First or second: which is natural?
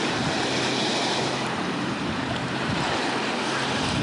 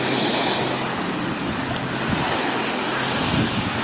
second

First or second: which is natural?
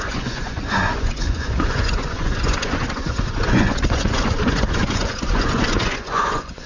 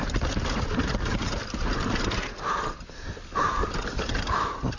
second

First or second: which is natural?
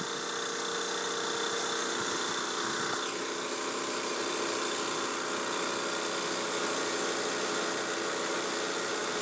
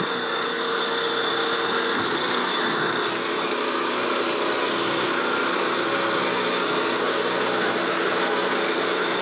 first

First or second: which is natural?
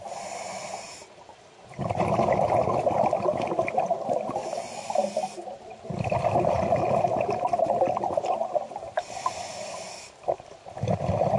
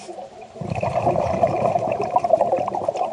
first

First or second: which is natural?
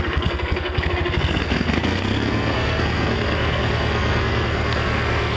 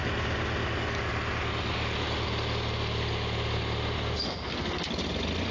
second